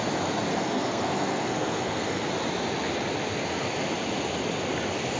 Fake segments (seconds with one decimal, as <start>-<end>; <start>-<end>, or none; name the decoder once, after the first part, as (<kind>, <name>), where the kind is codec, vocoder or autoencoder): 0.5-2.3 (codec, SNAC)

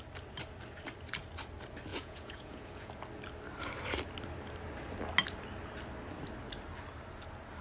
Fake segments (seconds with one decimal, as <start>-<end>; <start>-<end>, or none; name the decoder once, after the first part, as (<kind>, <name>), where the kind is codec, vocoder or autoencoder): 1.9-2.9 (vocoder, Vocos)

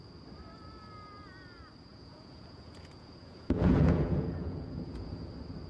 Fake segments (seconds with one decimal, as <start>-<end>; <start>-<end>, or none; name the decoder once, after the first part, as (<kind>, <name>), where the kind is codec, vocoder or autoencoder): 1.9-5.3 (vocoder, Vocos)